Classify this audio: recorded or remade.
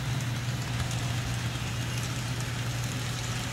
recorded